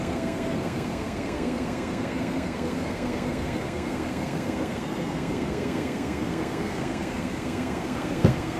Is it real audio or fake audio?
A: fake